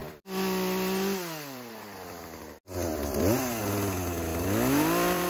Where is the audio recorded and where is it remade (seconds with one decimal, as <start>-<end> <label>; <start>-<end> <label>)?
0.0-2.4 remade; 2.4-2.9 recorded; 2.9-3.6 remade; 3.6-4.3 recorded; 4.3-5.3 remade